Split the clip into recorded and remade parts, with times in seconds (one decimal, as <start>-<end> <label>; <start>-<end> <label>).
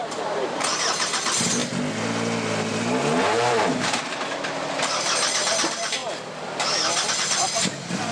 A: 0.0-1.6 remade; 1.6-3.2 recorded; 3.2-6.0 remade; 6.0-7.1 recorded; 7.1-8.1 remade